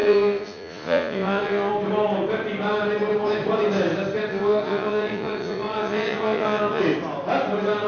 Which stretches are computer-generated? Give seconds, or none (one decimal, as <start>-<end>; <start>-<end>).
0.0-1.7; 4.3-6.8